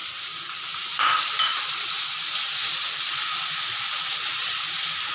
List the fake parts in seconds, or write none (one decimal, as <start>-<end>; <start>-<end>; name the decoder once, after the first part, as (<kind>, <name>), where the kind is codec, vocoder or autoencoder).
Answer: 0.7-1.5 (vocoder, BigVGAN v2); 3.8-5.1